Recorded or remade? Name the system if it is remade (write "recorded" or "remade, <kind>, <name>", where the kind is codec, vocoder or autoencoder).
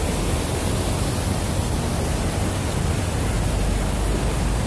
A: recorded